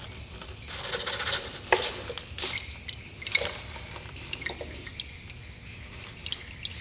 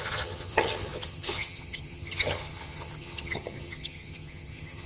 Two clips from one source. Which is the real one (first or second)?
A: first